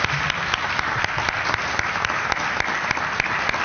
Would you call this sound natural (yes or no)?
yes